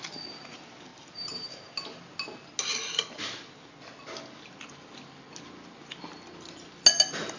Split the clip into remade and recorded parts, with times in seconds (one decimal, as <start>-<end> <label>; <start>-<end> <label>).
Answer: 0.0-0.9 recorded; 0.9-1.5 remade; 1.5-7.4 recorded

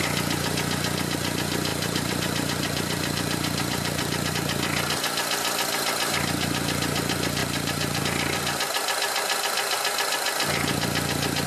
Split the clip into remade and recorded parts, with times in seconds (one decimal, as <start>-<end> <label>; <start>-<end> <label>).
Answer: 0.0-1.7 recorded; 1.7-4.3 remade; 4.3-7.4 recorded; 7.4-8.0 remade; 8.0-11.5 recorded

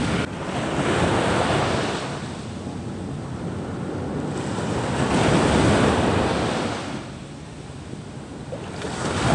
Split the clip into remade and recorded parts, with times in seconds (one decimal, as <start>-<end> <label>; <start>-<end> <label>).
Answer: 0.0-9.3 recorded

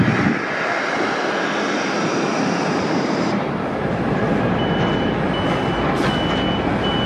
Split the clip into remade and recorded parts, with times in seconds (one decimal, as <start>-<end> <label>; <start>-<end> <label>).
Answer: 0.0-2.0 recorded; 2.0-4.2 remade; 4.2-7.1 recorded

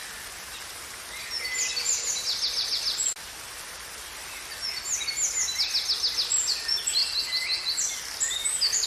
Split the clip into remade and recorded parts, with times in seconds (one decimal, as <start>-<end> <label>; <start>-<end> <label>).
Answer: 0.0-8.9 recorded

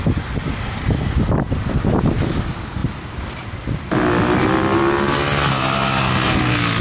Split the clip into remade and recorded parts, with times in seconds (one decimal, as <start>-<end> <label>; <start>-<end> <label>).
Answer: 0.0-6.8 recorded

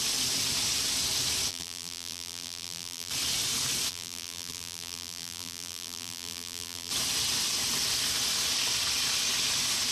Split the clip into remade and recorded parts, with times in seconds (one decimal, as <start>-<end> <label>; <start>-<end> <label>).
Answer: 0.0-1.5 recorded; 1.5-3.1 remade; 3.1-3.9 recorded; 3.9-6.9 remade; 6.9-9.9 recorded